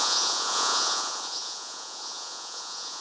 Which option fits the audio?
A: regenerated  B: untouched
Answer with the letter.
A